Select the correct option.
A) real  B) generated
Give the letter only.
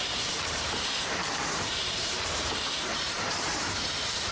B